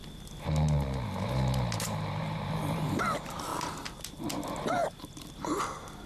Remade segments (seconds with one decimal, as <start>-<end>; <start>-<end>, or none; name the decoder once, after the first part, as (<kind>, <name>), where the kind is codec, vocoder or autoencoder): none

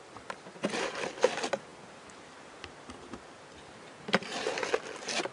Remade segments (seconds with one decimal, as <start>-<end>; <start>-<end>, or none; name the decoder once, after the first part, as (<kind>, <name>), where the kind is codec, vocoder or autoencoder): none

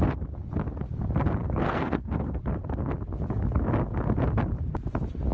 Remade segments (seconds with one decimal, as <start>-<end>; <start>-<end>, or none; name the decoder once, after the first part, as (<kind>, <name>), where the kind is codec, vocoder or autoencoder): 1.4-2.4 (codec, SNAC)

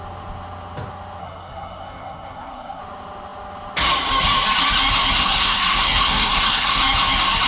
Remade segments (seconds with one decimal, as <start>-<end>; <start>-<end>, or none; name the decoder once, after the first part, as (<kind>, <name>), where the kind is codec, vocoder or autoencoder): 1.2-2.8 (codec, SNAC); 5.2-6.8

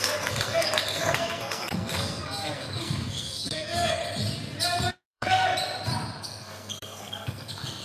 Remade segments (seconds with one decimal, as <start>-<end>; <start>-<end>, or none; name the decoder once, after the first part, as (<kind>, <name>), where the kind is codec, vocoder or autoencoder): 0.0-4.0 (codec, SNAC); 4.9-5.5; 6.2-7.8

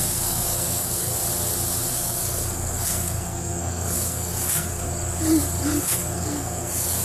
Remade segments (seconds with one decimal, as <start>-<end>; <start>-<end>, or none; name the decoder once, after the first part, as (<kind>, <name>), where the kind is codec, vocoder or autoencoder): 0.0-1.1 (codec, SNAC); 1.9-4.9; 5.8-7.0

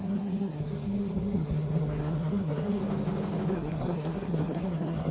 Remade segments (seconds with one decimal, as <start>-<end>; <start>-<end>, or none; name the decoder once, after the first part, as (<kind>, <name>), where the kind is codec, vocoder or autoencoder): 0.0-2.8 (codec, SNAC); 3.5-5.1